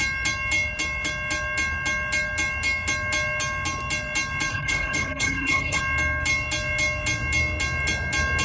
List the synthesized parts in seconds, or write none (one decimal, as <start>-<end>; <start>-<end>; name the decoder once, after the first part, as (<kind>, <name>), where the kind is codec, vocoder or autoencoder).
4.5-5.8 (codec, HILCodec)